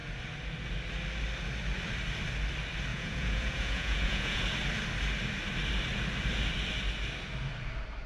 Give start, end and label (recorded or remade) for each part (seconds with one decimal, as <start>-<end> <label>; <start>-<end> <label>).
0.0-2.9 recorded; 2.9-4.4 remade; 4.4-8.1 recorded